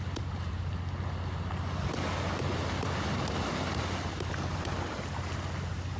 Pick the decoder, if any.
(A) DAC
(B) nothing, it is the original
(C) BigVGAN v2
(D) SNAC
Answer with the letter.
B